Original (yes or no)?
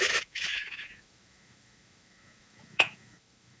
no